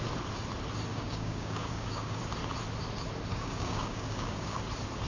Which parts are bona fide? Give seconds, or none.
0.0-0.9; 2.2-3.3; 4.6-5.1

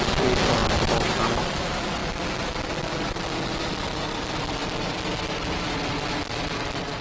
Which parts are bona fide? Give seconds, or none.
0.0-7.0

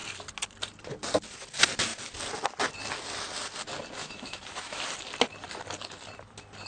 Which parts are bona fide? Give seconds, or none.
0.0-4.0; 4.8-6.7

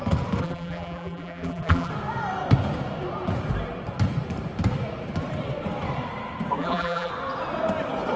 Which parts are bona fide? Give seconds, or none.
0.0-0.4; 1.9-6.6; 7.1-8.2

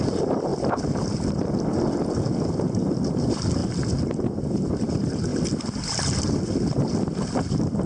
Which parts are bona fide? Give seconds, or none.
0.0-7.9

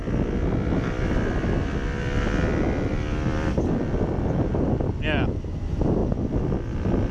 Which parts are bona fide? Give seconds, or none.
0.0-2.0